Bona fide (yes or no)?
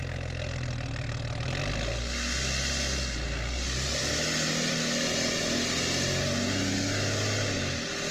yes